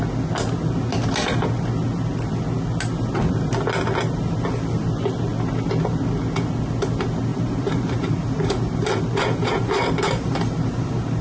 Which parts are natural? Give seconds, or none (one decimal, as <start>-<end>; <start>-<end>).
0.0-7.3